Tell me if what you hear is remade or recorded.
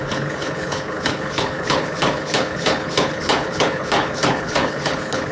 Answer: remade